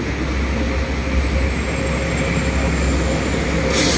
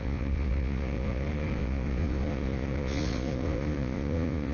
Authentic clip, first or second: first